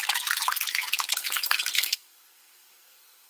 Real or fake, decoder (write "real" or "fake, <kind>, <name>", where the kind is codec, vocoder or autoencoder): fake, codec, SNAC